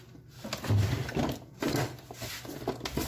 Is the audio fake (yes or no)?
no